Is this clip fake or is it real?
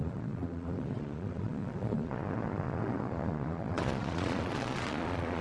fake